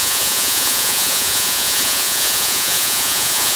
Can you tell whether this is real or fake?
fake